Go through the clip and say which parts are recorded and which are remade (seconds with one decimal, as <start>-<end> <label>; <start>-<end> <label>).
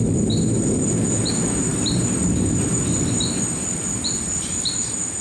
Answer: 0.0-1.7 recorded; 1.7-4.8 remade; 4.8-5.2 recorded